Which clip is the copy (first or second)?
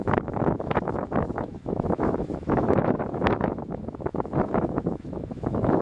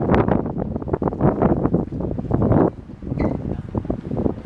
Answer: first